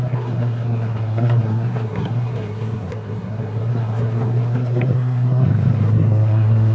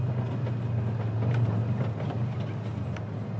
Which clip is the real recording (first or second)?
second